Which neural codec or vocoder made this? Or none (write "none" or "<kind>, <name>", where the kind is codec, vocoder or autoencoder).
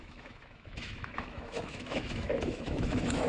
autoencoder, DAC-VAE